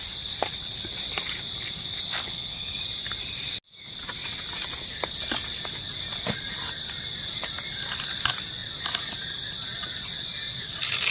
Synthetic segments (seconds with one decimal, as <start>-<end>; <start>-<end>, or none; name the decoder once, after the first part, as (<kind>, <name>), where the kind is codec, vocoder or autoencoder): 2.2-2.8 (codec, HILCodec)